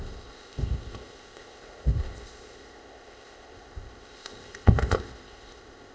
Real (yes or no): no